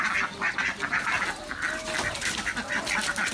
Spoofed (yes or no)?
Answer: no